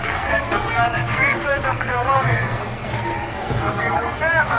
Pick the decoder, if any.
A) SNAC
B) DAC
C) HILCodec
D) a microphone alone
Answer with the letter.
A